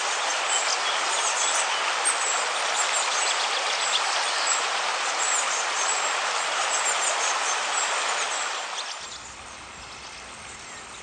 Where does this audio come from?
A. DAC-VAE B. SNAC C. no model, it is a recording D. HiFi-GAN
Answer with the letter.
C